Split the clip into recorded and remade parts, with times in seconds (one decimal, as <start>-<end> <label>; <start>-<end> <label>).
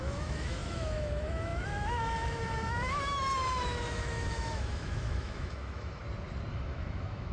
0.0-6.0 remade; 6.0-6.5 recorded; 6.5-7.3 remade